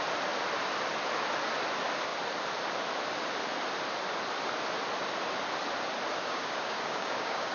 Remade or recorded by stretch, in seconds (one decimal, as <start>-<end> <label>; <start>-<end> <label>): 0.0-6.2 recorded; 6.2-7.5 remade